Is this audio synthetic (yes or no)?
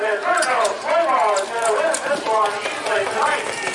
no